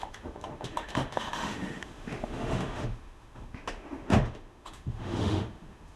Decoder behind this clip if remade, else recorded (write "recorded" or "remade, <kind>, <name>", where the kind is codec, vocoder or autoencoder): remade, autoencoder, DAC-VAE